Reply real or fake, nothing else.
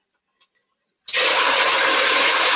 real